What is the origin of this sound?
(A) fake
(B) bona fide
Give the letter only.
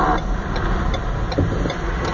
B